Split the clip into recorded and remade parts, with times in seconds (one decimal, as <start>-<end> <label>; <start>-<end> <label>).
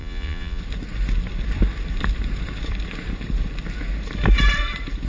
0.0-0.6 remade; 0.6-5.1 recorded